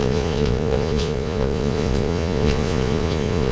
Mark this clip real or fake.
fake